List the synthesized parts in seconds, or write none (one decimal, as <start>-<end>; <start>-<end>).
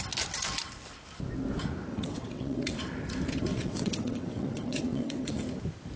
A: 1.9-2.8; 3.5-5.4